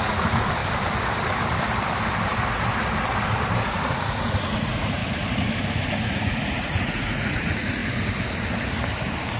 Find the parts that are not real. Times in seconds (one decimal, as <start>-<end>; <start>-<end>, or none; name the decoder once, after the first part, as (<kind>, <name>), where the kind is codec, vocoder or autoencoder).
0.0-0.6 (vocoder, Vocos); 3.6-5.0; 5.6-7.8